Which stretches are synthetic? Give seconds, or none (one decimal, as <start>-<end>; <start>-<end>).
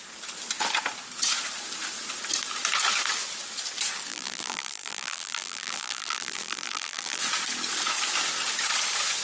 4.1-7.2